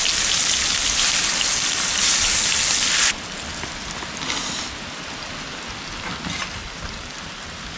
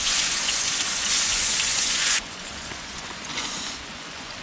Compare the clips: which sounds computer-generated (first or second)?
second